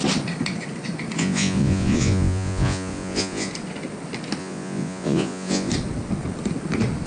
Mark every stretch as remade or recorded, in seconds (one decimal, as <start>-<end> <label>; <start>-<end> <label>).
0.0-1.2 recorded; 1.2-3.5 remade; 3.5-4.4 recorded; 4.4-5.7 remade; 5.7-7.1 recorded